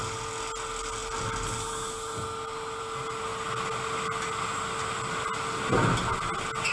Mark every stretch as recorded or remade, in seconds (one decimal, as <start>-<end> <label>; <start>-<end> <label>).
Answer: 0.0-6.7 recorded

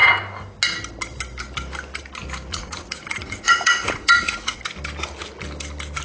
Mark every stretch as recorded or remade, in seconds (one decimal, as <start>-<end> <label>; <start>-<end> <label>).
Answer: 0.0-2.5 recorded; 2.5-4.6 remade; 4.6-6.0 recorded